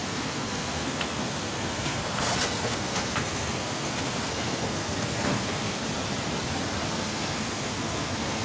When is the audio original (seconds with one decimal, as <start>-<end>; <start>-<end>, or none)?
5.8-6.9